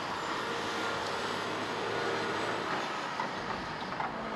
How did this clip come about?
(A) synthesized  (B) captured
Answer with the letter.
B